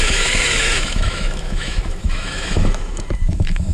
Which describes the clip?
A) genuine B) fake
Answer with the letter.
B